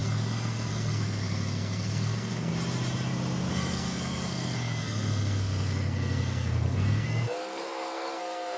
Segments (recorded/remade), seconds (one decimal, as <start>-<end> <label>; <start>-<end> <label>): 0.0-2.5 remade; 2.5-3.5 recorded; 3.5-8.6 remade